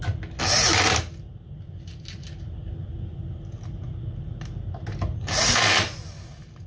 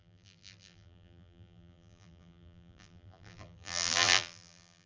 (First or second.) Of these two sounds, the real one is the first